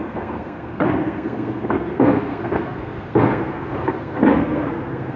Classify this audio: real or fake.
fake